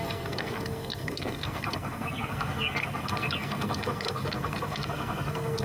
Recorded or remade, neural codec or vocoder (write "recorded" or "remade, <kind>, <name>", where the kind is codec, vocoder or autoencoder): remade, codec, SNAC